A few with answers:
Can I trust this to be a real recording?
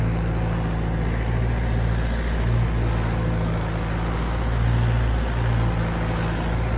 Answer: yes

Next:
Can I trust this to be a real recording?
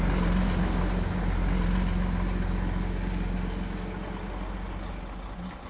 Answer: yes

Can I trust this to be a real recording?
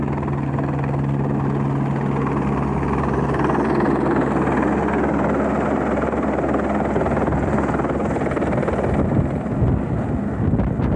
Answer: yes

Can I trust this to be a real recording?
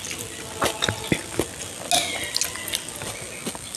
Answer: yes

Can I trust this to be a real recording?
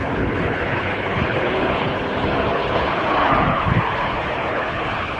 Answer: no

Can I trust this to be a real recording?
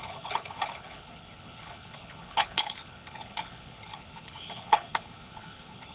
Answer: no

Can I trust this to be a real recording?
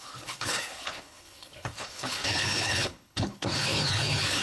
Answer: no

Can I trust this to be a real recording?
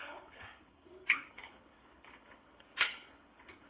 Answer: no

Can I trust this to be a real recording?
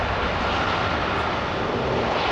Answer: yes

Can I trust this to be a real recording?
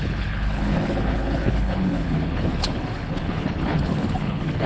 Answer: no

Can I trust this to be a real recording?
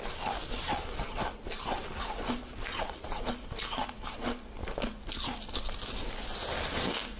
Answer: yes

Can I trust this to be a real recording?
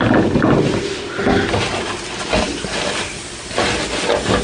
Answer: yes